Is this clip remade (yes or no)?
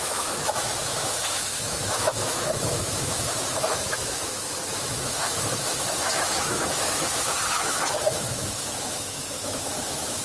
yes